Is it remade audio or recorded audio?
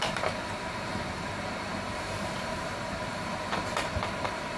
remade